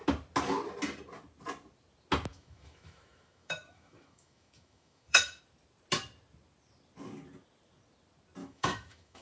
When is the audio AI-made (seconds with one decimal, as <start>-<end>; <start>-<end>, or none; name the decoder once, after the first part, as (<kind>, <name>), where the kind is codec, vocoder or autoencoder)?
2.3-5.4 (autoencoder, DAC-VAE); 8.4-9.2